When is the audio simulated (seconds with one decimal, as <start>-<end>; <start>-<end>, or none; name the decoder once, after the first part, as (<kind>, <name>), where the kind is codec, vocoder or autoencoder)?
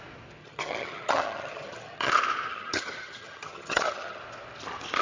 0.4-2.1 (vocoder, HiFi-GAN); 2.5-4.2